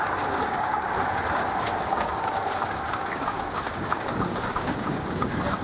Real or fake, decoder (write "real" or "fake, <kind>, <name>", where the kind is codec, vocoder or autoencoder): fake, codec, DAC